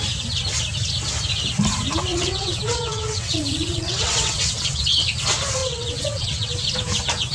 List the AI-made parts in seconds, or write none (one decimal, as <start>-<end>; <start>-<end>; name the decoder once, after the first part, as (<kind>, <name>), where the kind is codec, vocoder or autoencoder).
2.1-4.8 (vocoder, WaveNeXt); 5.6-6.5